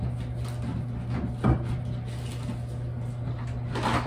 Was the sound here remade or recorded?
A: recorded